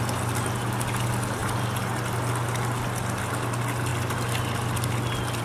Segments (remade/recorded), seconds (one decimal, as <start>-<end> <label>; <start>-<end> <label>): 0.0-5.4 recorded